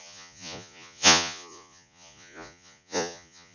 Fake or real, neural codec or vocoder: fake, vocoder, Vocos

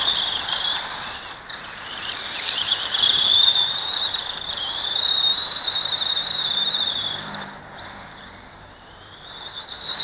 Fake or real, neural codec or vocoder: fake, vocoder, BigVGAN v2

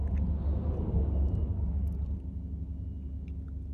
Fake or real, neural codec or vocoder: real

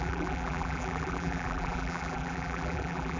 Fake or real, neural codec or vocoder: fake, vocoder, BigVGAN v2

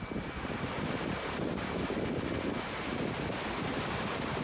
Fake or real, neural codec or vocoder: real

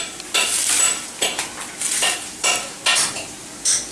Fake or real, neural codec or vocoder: real